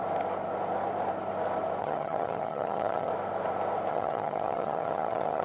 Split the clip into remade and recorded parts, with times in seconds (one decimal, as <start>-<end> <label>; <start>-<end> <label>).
0.0-1.8 recorded; 1.8-3.1 remade; 3.1-3.9 recorded; 3.9-5.4 remade